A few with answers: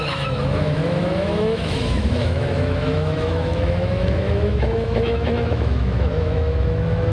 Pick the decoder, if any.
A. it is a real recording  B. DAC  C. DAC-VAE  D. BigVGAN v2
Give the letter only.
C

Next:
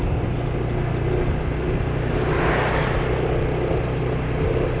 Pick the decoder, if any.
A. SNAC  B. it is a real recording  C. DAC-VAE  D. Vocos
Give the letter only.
B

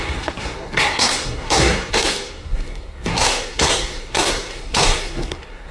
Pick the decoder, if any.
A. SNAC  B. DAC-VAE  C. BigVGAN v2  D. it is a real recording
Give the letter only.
A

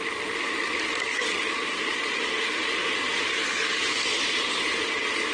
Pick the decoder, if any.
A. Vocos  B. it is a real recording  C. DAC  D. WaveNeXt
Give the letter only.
B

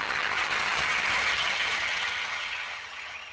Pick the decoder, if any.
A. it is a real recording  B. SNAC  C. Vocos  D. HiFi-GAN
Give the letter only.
D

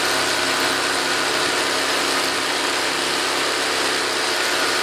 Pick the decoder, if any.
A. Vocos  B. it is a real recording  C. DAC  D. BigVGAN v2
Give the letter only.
B